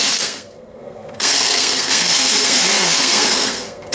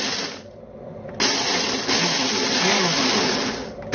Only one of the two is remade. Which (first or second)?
first